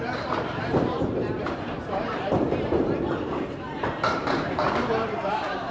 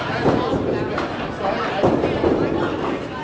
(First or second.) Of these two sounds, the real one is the second